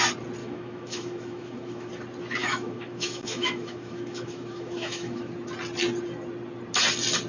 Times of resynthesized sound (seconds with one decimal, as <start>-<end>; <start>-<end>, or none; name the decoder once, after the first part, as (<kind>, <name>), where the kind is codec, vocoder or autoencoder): 0.4-1.9 (autoencoder, DAC-VAE); 2.4-5.3